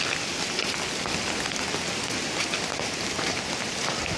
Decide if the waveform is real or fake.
real